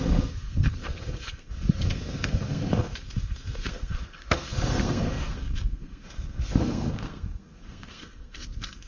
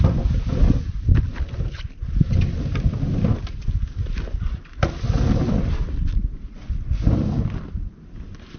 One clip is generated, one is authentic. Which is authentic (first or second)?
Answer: second